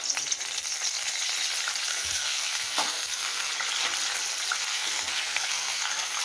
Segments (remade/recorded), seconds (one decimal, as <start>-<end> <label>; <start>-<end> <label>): 0.0-1.9 recorded; 1.9-3.5 remade; 3.5-4.7 recorded; 4.7-6.2 remade